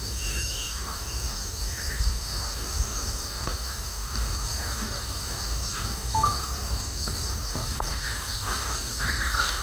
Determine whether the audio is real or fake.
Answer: fake